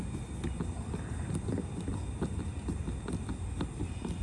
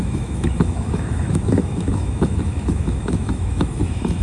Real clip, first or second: first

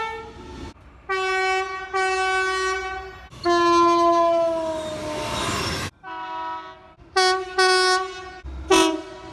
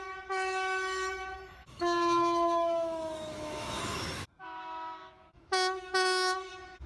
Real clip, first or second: first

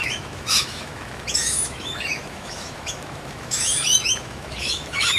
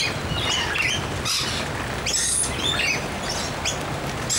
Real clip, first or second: second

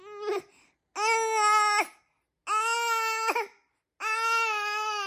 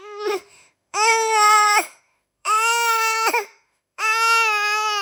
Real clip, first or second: first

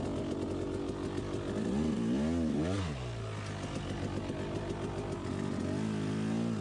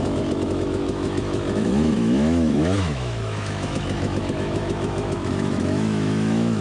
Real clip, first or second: first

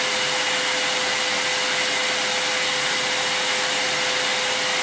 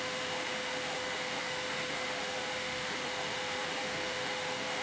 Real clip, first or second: first